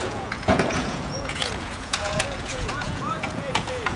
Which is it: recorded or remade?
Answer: remade